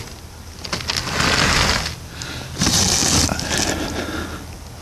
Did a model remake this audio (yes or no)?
no